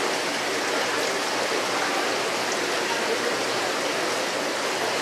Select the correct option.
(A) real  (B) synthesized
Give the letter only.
A